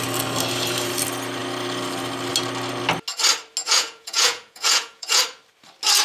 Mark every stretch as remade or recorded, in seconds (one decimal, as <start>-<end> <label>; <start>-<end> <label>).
0.0-3.6 recorded; 3.6-5.2 remade; 5.2-6.0 recorded

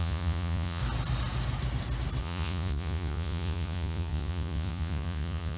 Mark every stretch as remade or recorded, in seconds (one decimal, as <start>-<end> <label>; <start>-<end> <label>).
0.0-0.8 remade; 0.8-2.2 recorded; 2.2-5.6 remade

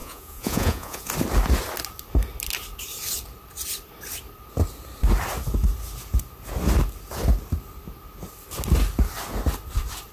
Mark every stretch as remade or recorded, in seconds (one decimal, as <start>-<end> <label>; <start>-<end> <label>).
0.0-1.1 remade; 1.1-10.1 recorded

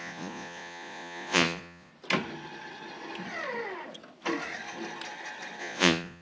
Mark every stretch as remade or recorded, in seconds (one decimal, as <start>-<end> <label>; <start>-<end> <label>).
0.0-1.9 remade; 1.9-5.6 recorded; 5.6-6.2 remade

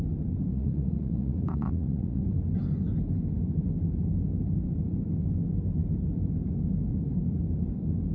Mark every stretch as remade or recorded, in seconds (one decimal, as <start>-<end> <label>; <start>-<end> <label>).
0.0-0.5 recorded; 0.5-2.2 remade; 2.2-8.1 recorded

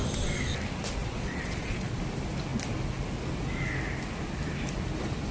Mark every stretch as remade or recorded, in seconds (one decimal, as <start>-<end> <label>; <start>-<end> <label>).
0.0-1.0 recorded; 1.0-2.0 remade; 2.0-5.3 recorded